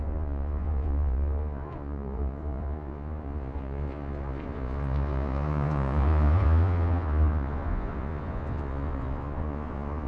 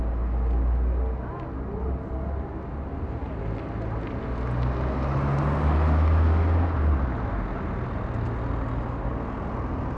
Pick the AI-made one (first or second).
first